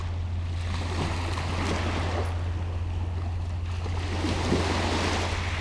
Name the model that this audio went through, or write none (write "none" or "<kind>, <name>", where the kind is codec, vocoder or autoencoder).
none